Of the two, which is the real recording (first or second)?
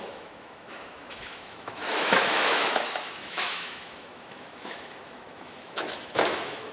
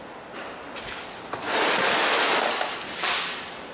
second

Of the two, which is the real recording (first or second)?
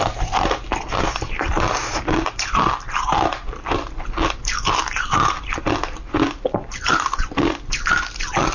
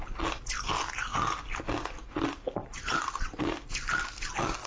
second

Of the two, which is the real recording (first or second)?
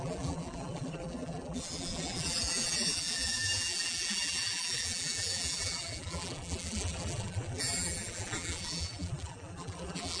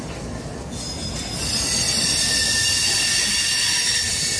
second